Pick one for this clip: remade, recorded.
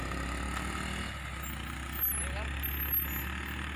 recorded